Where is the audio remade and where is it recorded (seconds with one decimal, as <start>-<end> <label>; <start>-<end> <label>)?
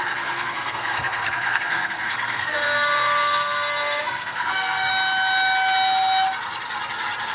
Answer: 0.0-4.9 remade; 4.9-7.3 recorded